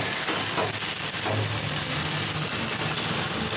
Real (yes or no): yes